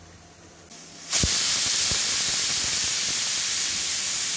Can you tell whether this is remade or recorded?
recorded